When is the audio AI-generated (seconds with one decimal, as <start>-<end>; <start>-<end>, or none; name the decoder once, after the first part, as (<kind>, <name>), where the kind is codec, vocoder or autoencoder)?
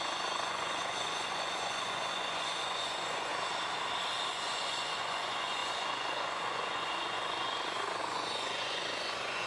0.0-3.3 (vocoder, Vocos); 4.3-9.5